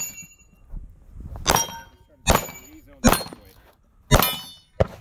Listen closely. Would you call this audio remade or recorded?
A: recorded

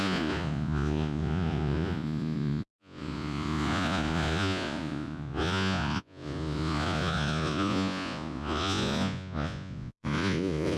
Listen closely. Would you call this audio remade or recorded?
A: remade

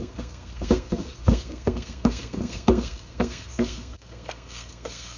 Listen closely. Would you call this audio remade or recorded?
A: remade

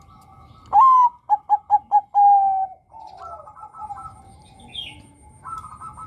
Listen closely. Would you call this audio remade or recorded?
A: recorded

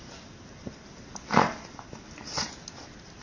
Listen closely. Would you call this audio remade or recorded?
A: recorded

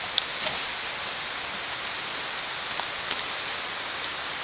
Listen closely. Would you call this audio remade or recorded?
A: recorded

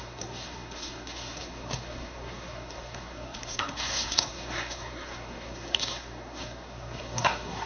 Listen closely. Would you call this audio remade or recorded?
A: remade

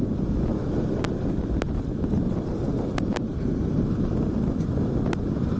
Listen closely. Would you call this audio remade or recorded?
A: recorded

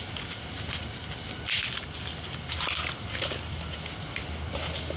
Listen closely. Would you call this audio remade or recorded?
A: recorded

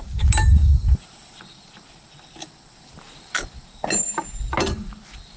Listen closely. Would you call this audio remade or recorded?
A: recorded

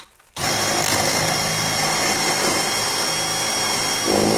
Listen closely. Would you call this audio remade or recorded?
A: recorded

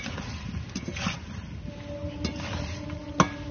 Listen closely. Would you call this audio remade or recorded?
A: recorded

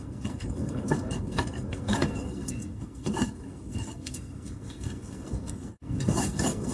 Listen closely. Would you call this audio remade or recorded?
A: remade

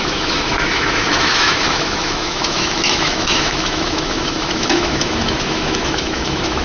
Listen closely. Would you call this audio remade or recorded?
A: remade